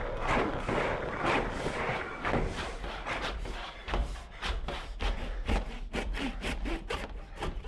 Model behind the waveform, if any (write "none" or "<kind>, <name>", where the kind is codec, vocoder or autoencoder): none